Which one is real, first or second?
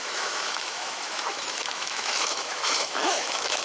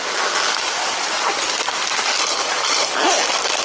second